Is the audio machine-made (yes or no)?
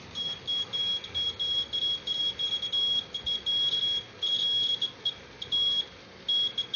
no